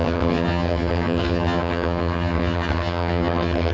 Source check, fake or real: fake